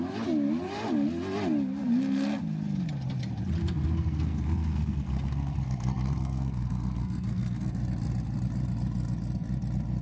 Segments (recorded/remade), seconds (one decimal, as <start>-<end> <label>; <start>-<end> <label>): 0.0-3.6 recorded; 3.6-7.7 remade; 7.7-10.0 recorded